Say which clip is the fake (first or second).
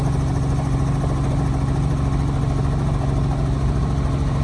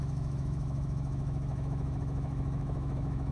second